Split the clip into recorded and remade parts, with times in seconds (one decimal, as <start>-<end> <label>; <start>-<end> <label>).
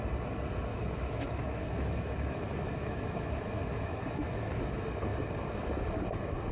0.0-0.7 recorded; 0.7-4.6 remade; 4.6-6.5 recorded